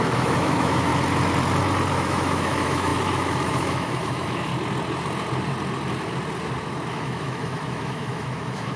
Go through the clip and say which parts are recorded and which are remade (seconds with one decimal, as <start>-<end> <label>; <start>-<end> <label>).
0.0-0.9 remade; 0.9-1.9 recorded; 1.9-4.5 remade; 4.5-6.9 recorded; 6.9-8.8 remade